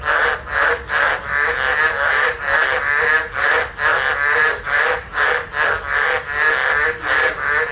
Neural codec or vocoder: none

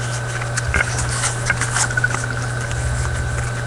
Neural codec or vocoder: none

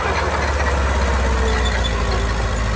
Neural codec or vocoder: none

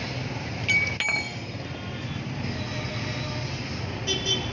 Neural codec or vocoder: none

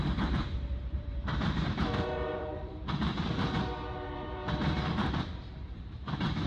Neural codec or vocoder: vocoder, BigVGAN v2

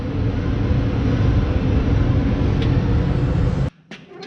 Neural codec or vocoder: none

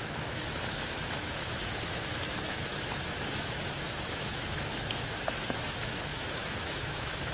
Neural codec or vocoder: autoencoder, DAC-VAE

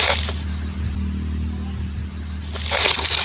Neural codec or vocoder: none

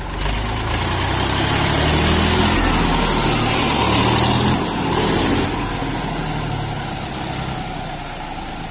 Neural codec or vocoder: none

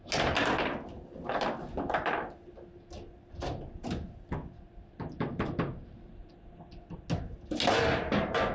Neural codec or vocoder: none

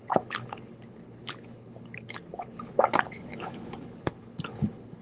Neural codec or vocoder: codec, HILCodec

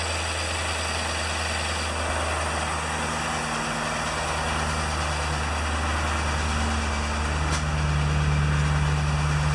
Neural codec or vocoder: none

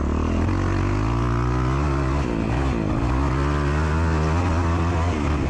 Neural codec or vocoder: none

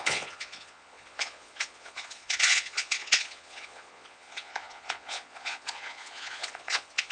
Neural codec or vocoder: vocoder, Vocos